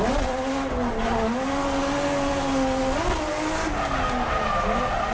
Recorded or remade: recorded